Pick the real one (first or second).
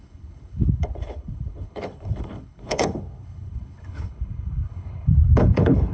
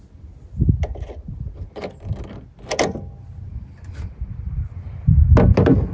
second